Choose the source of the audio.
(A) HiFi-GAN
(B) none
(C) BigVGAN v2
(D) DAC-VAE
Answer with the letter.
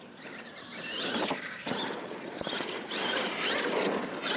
C